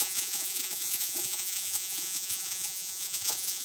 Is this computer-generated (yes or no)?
yes